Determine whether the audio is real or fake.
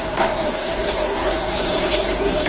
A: fake